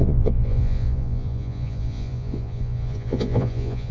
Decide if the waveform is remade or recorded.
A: remade